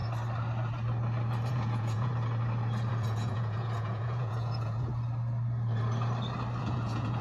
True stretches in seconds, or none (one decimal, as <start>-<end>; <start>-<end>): 0.0-1.5; 2.1-2.9; 4.9-6.6